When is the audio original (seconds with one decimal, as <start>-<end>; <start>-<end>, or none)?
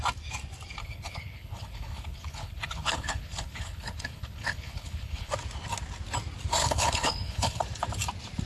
0.0-0.8; 5.3-6.6; 7.6-8.5